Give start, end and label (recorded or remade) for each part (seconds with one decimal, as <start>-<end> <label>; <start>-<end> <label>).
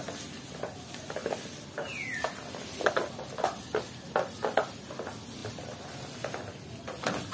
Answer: 0.0-7.3 recorded